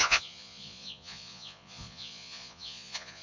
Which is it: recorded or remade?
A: remade